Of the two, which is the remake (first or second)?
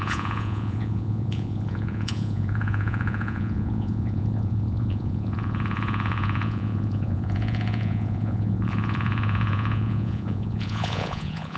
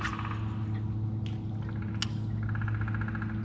first